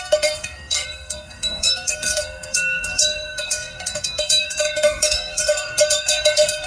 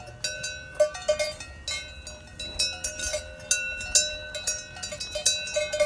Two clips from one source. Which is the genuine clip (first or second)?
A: second